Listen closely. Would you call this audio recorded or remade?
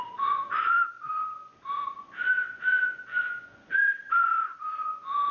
remade